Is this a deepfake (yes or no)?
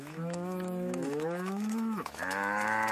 yes